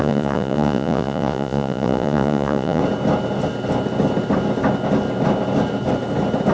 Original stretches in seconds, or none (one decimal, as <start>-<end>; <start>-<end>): 2.8-6.5

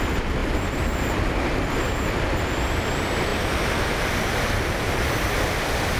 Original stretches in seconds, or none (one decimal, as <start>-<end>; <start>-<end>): 0.0-6.0